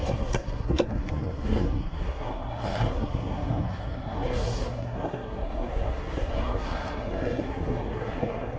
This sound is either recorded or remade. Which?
remade